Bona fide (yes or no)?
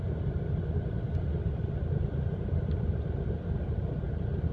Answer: yes